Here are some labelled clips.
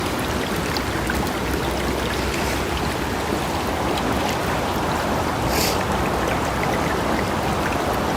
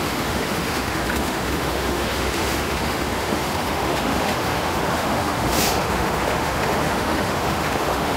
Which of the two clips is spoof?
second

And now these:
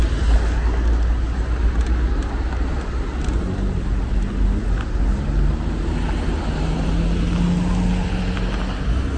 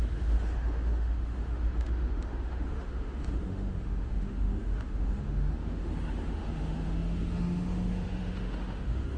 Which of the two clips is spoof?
second